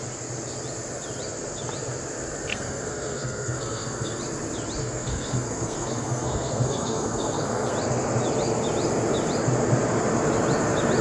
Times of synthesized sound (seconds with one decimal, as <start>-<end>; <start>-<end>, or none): 2.5-4.2; 4.8-7.7